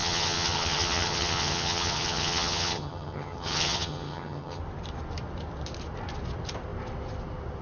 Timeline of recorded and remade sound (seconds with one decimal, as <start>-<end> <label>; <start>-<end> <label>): 0.0-4.6 remade; 4.6-7.6 recorded